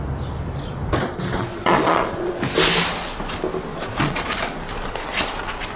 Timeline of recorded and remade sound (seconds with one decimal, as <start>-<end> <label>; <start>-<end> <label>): 0.0-1.4 recorded; 1.4-2.3 remade; 2.3-3.7 recorded; 3.7-4.3 remade; 4.3-5.8 recorded